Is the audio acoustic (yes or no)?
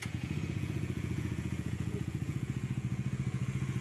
no